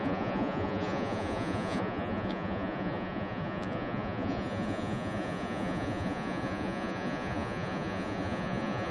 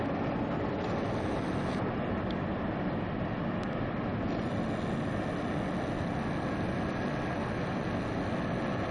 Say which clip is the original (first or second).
second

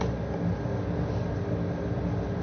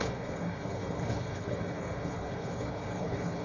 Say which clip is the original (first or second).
first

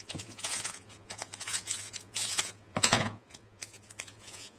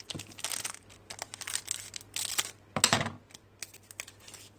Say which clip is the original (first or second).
second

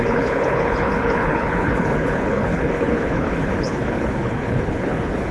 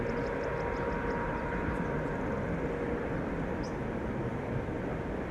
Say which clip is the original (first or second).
second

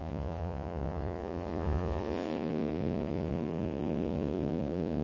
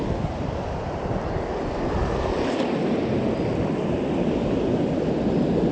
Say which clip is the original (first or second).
second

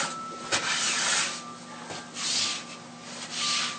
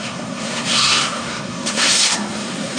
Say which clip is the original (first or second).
first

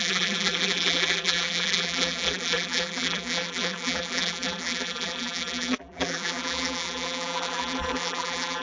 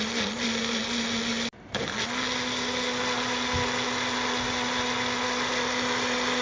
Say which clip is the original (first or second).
second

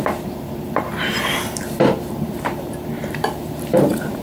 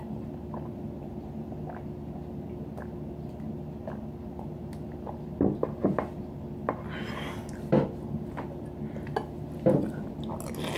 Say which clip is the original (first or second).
second